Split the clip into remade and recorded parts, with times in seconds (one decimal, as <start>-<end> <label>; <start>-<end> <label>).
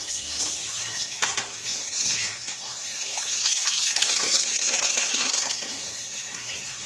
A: 0.0-6.9 remade